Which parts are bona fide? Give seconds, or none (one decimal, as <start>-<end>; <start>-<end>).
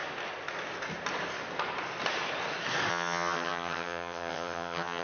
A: 0.0-2.9